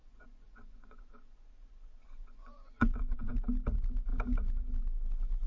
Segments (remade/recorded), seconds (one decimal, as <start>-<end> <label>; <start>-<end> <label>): 0.0-3.3 remade; 3.3-5.5 recorded